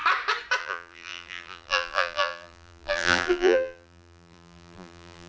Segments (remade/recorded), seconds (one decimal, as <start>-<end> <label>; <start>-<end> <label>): 0.0-0.6 recorded; 0.6-5.3 remade